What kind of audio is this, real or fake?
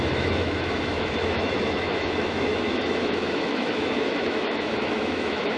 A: fake